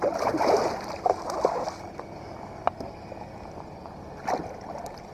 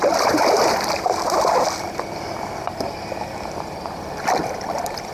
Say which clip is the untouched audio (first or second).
first